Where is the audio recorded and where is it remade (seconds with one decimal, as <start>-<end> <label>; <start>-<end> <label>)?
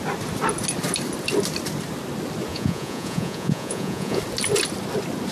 0.0-2.5 recorded; 2.5-4.2 remade; 4.2-5.3 recorded